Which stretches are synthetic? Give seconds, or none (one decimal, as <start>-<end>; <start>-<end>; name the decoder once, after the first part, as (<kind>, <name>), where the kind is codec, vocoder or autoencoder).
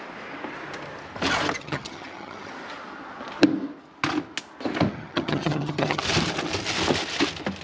1.6-2.5 (vocoder, HiFi-GAN); 4.9-6.0